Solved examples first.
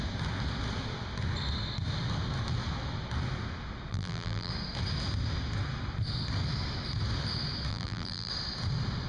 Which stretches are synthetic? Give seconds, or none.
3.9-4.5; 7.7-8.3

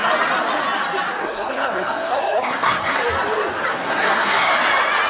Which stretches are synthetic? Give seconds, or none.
1.2-3.0; 3.7-4.5

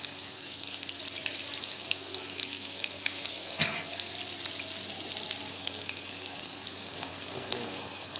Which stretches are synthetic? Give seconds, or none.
0.0-1.0; 1.6-4.1; 5.5-8.2

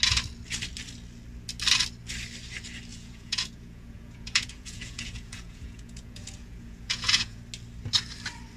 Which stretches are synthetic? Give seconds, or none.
2.9-7.4

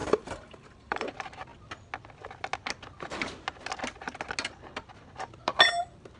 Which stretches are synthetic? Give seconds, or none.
0.0-1.1

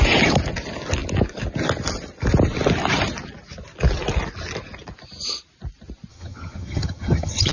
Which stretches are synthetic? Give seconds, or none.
6.1-7.5

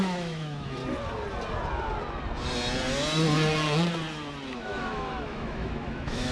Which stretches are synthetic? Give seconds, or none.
0.0-0.8; 4.6-6.3